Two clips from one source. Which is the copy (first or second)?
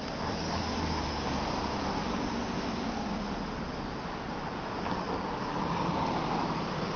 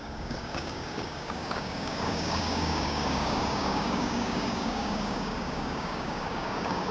second